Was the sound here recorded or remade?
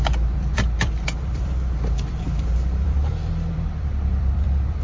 remade